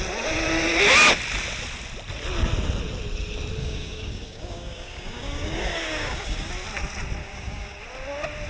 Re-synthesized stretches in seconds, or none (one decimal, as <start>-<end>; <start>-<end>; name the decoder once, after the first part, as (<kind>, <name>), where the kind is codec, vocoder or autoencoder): 3.6-6.5 (codec, DAC); 7.2-7.8